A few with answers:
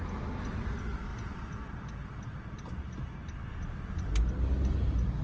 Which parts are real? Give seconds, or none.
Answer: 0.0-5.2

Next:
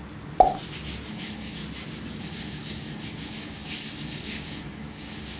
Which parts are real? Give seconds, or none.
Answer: 0.0-1.1; 1.6-2.2

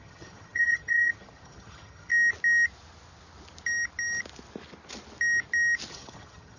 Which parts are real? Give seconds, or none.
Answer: 2.1-5.9

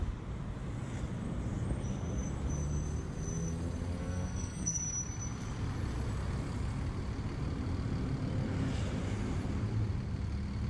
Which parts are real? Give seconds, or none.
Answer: 0.0-4.0; 4.8-10.7

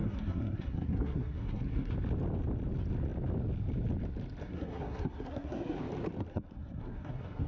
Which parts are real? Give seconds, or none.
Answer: 1.9-4.4; 5.8-6.3

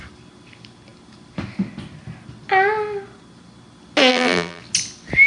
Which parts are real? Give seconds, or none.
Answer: 0.0-4.1; 4.6-5.3

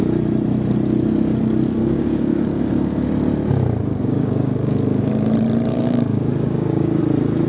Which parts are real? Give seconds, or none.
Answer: 0.0-1.8; 3.1-3.9; 5.0-5.7; 7.0-7.5